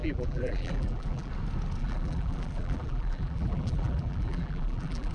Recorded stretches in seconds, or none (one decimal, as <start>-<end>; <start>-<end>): 1.3-1.8